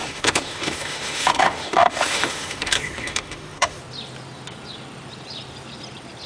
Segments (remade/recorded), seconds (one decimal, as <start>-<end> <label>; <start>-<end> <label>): 0.0-3.8 remade; 3.8-6.3 recorded